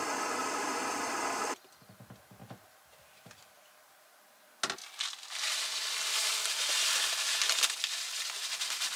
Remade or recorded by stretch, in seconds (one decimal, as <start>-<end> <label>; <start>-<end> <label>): 0.0-0.4 recorded; 0.4-1.1 remade; 1.1-2.4 recorded; 2.4-4.1 remade; 4.1-9.0 recorded